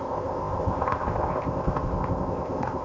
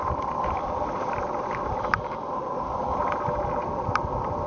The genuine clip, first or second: second